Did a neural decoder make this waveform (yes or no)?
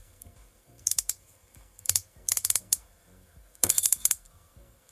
yes